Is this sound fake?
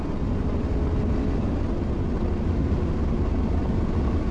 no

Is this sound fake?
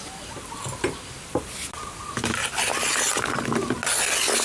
no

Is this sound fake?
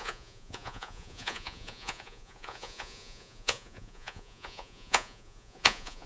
yes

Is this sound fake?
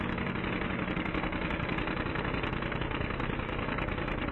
no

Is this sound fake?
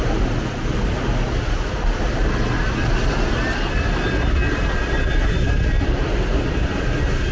no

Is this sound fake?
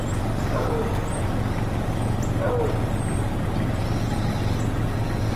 no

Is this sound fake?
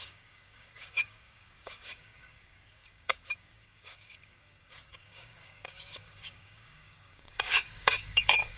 yes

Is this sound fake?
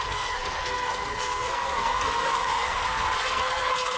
yes